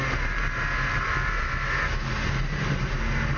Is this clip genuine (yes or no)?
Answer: yes